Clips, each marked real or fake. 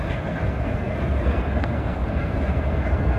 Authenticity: fake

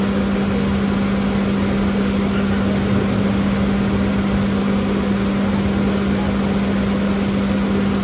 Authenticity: real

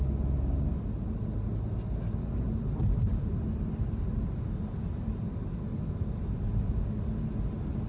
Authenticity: real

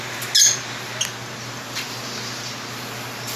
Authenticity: real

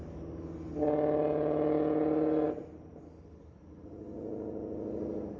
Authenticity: real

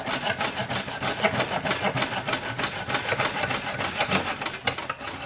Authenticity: real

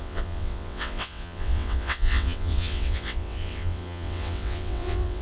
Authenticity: fake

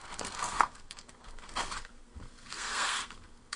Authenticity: fake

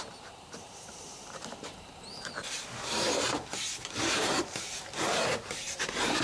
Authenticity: fake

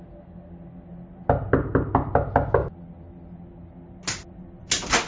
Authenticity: real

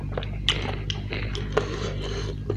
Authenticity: real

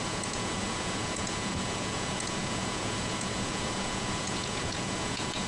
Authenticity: fake